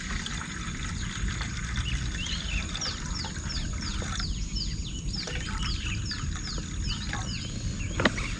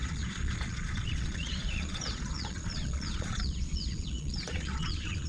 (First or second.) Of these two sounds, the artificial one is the second